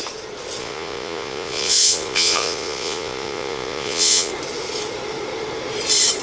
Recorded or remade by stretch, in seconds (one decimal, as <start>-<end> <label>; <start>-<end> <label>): 0.0-0.6 recorded; 0.6-4.3 remade; 4.3-6.2 recorded